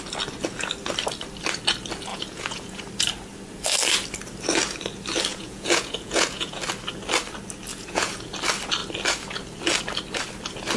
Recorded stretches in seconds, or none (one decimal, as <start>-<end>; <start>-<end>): 0.0-2.1; 2.8-5.3; 6.6-7.7; 8.3-10.8